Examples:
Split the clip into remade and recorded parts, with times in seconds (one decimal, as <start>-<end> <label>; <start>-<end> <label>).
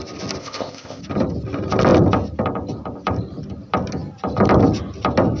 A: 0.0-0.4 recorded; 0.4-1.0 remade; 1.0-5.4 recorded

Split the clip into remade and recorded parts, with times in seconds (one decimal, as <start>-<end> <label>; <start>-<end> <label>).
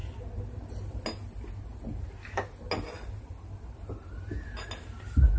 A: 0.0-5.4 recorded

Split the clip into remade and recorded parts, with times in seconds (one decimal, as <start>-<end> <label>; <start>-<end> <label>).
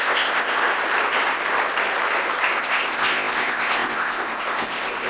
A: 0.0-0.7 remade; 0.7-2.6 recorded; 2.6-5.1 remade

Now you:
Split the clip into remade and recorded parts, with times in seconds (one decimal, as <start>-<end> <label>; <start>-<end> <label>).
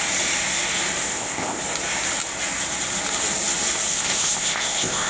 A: 0.0-1.1 recorded; 1.1-1.6 remade; 1.6-3.9 recorded; 3.9-5.1 remade